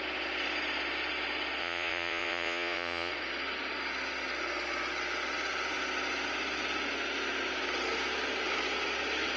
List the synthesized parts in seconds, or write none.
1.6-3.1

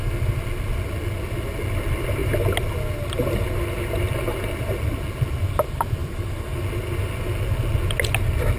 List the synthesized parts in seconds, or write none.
6.0-6.6

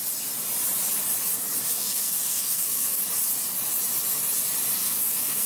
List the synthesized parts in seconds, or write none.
1.7-3.0; 4.8-5.5

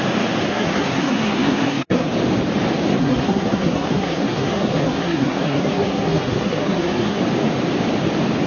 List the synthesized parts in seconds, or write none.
0.5-2.1; 3.0-7.2

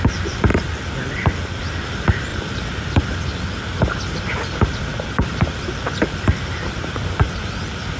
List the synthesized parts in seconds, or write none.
0.5-1.6; 2.3-3.2; 4.9-8.0

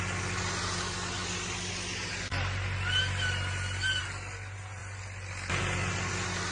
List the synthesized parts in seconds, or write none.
none

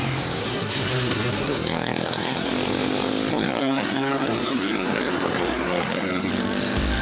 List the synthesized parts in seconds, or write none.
0.4-2.5; 3.3-6.3